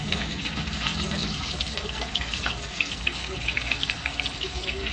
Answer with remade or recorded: remade